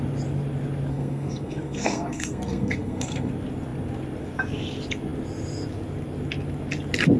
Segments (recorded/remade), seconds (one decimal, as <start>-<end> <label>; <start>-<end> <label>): 0.0-0.9 recorded; 0.9-3.3 remade; 3.3-7.2 recorded